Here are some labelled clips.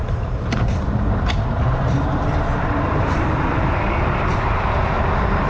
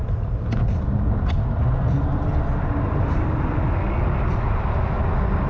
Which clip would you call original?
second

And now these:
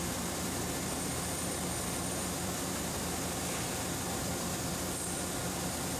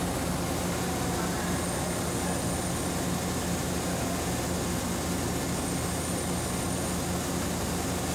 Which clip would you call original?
second